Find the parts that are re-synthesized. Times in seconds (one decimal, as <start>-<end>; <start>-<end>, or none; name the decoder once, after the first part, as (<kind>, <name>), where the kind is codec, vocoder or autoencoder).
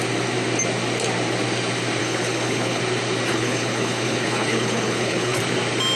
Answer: 2.0-2.8 (codec, HILCodec); 3.3-5.4